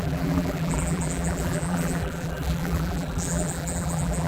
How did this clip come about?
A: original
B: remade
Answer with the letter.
B